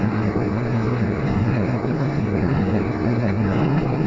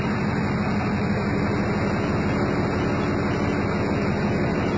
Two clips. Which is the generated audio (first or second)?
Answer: first